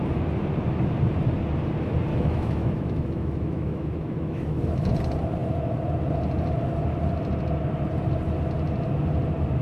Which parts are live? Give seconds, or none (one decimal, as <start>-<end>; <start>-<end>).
0.0-2.1; 4.9-9.6

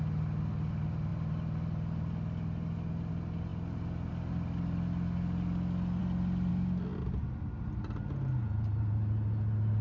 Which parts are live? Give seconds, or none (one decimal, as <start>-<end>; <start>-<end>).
0.0-9.8

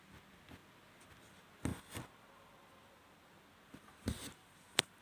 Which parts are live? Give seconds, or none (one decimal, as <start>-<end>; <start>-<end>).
0.0-5.0

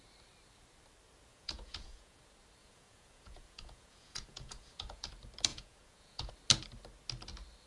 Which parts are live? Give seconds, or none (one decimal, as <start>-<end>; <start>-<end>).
0.0-1.3; 2.2-2.6; 5.1-5.5; 6.3-7.7